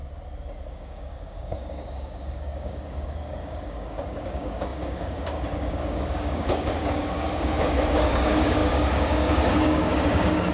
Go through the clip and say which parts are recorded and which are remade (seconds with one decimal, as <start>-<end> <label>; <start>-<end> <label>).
0.0-0.7 recorded; 0.7-10.5 remade